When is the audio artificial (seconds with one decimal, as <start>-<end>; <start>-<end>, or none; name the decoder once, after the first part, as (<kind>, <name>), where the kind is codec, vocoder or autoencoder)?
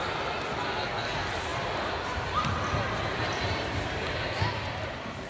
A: none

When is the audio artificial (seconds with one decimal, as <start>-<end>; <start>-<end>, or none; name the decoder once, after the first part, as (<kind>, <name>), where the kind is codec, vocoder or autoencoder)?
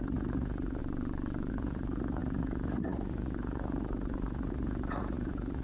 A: 0.0-0.8 (vocoder, Vocos); 1.5-5.6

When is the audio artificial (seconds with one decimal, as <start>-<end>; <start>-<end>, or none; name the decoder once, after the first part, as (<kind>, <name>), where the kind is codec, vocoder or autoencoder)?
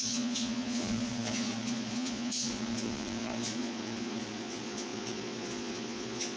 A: 0.0-6.4 (vocoder, Vocos)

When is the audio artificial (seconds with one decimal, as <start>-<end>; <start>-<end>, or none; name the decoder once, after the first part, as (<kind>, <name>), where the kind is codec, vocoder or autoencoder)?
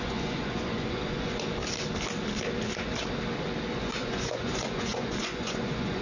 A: 0.0-1.6 (vocoder, Vocos); 3.7-6.0